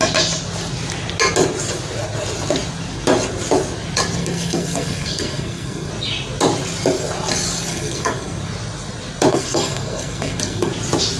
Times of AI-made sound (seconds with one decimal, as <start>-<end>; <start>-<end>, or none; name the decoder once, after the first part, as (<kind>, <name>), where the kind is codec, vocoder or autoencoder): 4.2-5.9 (codec, SNAC); 7.7-8.4; 9.3-10.7